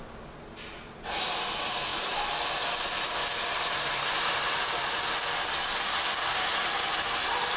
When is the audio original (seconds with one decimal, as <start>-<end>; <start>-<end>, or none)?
0.0-7.6